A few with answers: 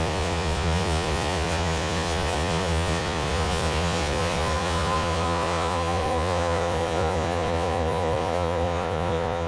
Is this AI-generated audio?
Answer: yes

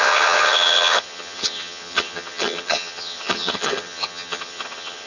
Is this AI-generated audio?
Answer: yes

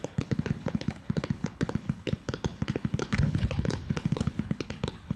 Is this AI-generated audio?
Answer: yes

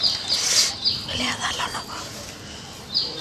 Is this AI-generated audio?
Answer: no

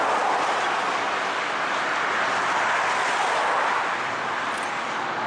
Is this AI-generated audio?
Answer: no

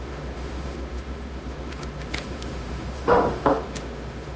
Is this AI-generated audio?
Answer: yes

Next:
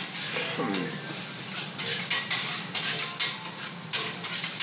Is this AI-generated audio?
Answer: no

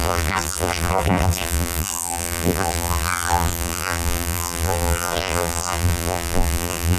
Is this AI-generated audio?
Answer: yes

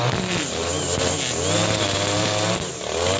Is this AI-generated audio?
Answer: no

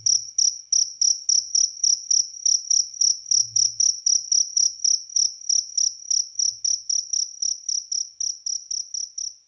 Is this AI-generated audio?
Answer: no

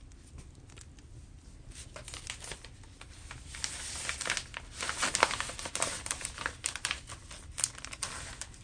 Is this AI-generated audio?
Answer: no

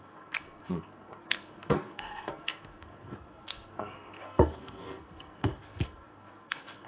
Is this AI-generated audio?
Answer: yes